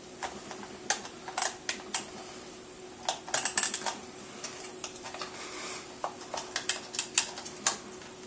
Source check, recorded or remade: recorded